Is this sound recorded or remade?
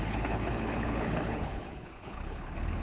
remade